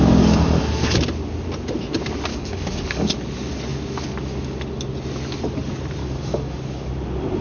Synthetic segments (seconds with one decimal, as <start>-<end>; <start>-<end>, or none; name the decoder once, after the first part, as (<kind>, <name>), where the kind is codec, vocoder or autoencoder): 2.3-3.1 (codec, DAC); 6.0-6.9